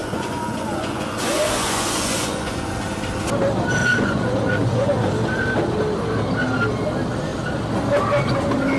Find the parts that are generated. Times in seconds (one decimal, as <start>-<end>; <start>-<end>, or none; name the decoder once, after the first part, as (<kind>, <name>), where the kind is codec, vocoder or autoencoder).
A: 0.0-2.8 (vocoder, Vocos); 3.8-5.1